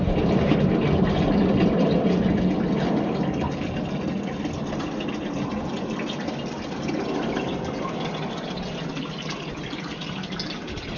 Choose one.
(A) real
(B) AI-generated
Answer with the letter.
A